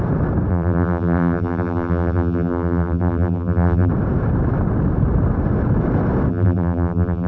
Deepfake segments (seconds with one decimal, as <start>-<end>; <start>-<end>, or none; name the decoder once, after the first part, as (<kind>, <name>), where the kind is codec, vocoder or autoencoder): 0.5-3.9 (vocoder, BigVGAN v2); 6.3-7.3